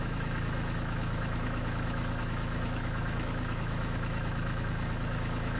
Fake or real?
fake